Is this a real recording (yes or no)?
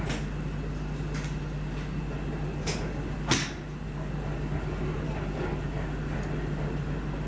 yes